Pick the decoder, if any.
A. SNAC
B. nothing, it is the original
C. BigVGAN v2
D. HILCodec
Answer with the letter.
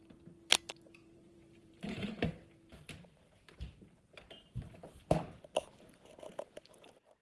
C